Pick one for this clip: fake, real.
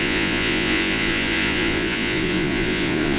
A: fake